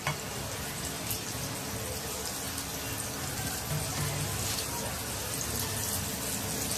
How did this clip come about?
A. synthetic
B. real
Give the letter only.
B